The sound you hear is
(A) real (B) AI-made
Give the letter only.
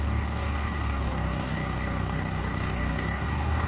B